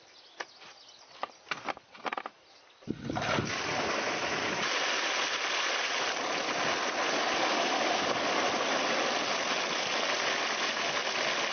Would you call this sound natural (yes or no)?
yes